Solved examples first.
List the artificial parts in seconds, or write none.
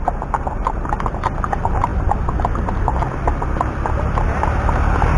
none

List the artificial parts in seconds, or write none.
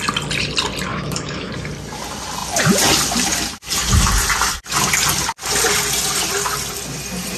0.9-1.5 (autoencoder, DAC-VAE)